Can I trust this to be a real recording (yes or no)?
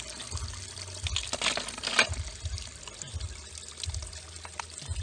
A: yes